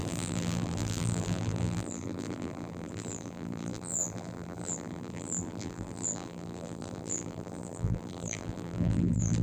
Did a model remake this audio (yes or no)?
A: yes